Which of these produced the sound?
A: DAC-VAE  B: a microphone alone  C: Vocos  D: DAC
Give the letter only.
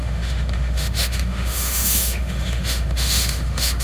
A